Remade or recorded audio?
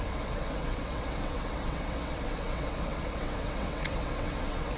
remade